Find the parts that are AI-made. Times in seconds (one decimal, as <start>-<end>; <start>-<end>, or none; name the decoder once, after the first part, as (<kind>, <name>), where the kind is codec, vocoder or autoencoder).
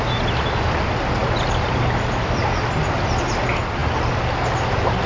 none